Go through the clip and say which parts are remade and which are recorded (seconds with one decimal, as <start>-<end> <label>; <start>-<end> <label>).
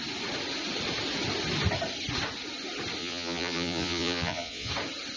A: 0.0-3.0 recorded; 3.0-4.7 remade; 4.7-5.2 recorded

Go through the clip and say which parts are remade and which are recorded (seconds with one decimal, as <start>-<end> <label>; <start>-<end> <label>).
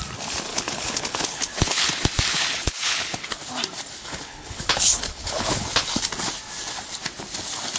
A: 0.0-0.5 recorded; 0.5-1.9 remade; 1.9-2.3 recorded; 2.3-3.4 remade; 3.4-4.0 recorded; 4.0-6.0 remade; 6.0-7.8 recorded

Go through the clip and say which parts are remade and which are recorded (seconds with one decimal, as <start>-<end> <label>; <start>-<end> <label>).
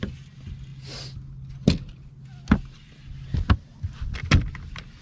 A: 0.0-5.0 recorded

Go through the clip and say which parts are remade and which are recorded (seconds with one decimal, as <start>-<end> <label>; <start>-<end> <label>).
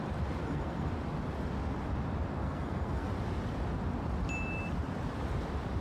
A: 0.0-0.4 recorded; 0.4-0.9 remade; 0.9-2.4 recorded; 2.4-3.1 remade; 3.1-5.8 recorded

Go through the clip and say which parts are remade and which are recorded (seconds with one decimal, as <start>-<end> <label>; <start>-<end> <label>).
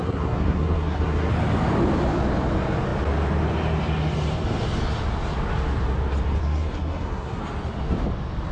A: 0.0-1.3 remade; 1.3-6.4 recorded; 6.4-7.4 remade; 7.4-8.5 recorded